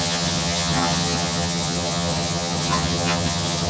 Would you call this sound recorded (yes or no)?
no